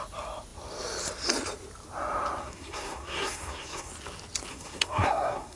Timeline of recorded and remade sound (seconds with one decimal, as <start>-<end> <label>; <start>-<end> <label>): 0.0-2.4 recorded; 2.4-3.9 remade; 3.9-4.5 recorded; 4.5-5.6 remade